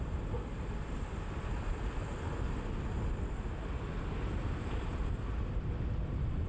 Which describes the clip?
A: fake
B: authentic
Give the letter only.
B